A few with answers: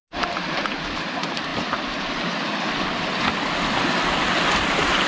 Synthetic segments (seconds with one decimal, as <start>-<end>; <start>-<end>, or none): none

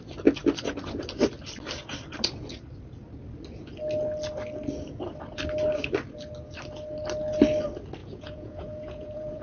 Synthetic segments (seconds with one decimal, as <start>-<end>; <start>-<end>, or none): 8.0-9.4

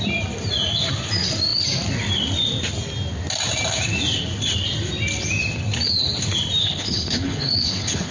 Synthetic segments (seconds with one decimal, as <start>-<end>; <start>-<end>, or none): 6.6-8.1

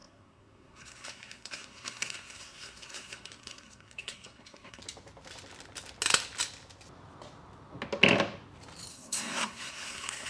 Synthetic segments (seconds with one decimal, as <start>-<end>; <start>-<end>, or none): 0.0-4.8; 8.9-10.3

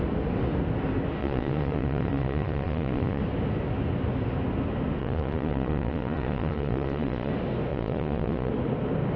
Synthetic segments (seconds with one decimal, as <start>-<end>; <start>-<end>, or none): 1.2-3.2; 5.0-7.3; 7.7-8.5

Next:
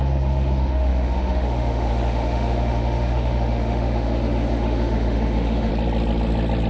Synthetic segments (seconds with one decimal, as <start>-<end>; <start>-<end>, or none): 0.0-5.7

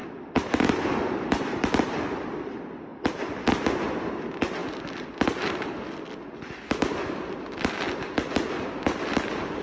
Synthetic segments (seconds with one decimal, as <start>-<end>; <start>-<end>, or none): 0.0-0.8

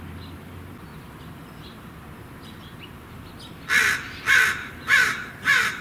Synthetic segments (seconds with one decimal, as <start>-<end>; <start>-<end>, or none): 0.9-3.3; 4.5-5.8